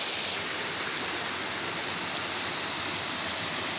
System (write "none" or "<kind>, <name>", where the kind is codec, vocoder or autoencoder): none